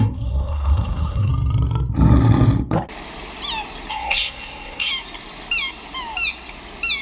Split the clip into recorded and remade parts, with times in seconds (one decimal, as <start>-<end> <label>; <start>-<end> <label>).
0.0-1.3 remade; 1.3-3.9 recorded; 3.9-4.9 remade; 4.9-7.0 recorded